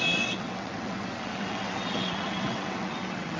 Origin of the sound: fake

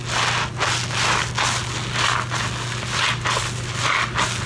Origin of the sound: real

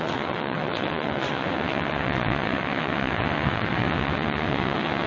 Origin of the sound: fake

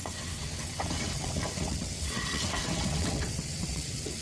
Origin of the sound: fake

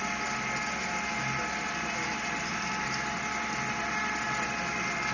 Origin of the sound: real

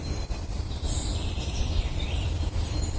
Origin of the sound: real